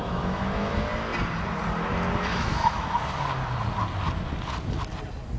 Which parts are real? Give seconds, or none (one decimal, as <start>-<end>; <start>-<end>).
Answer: 0.7-2.3; 3.0-5.4